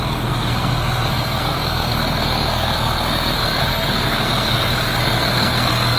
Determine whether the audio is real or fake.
fake